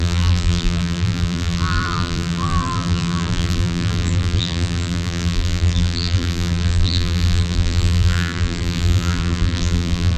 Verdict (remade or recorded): remade